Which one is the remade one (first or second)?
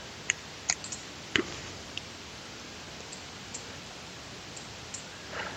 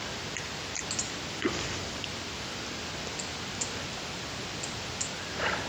first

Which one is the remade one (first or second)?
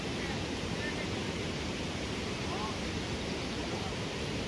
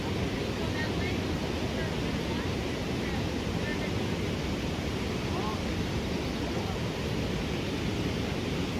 first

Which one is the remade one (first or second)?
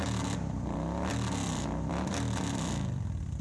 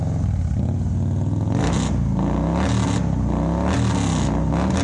first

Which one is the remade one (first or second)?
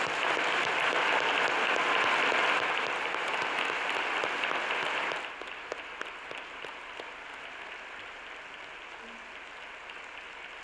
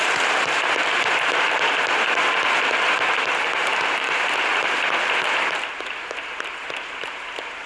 second